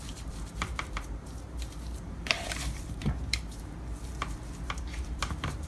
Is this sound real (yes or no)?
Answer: no